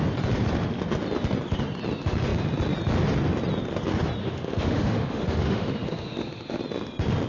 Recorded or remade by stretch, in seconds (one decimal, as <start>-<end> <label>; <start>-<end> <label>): 0.0-4.2 recorded; 4.2-6.6 remade; 6.6-7.3 recorded